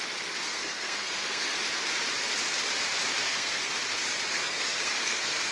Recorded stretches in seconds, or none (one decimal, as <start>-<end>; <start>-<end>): 0.0-0.5; 1.6-3.2; 3.7-4.3